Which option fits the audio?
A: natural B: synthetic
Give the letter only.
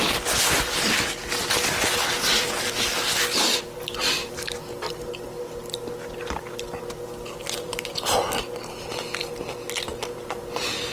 A